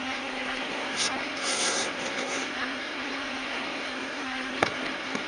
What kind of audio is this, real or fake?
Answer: fake